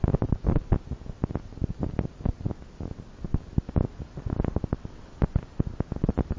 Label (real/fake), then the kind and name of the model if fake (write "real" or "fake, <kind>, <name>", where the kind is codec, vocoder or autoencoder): real